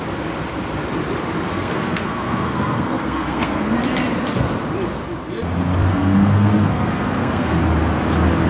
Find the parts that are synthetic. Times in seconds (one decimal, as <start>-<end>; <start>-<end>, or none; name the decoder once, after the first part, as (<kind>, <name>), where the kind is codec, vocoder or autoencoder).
1.5-3.6 (codec, SNAC); 5.9-7.6